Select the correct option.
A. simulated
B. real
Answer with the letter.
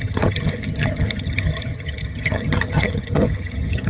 A